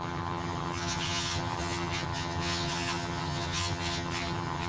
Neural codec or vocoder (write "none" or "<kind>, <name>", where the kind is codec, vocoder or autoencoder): vocoder, HiFi-GAN